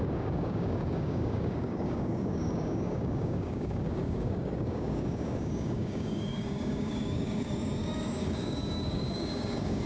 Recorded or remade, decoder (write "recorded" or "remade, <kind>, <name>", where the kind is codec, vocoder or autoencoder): remade, codec, DAC